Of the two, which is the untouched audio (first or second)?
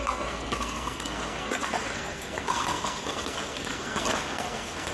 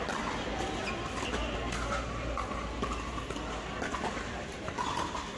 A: second